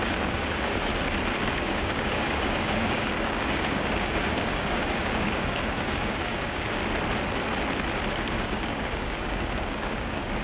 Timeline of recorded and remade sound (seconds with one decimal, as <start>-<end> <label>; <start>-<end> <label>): 0.0-0.9 remade; 0.9-1.5 recorded; 1.5-6.8 remade; 6.8-8.3 recorded; 8.3-10.4 remade